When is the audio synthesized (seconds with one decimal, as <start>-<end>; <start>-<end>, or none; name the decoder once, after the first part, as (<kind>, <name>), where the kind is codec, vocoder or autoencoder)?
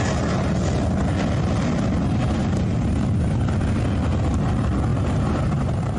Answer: 2.2-3.4 (vocoder, BigVGAN v2); 4.9-6.0